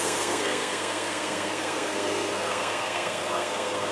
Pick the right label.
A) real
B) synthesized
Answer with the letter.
B